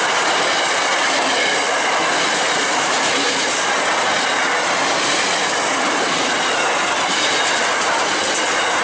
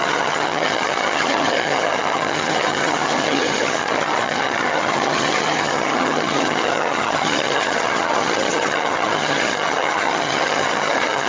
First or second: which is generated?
second